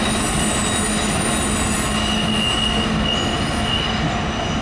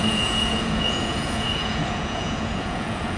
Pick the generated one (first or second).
second